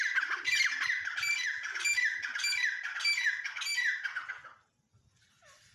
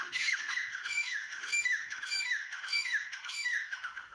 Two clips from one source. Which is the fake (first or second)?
second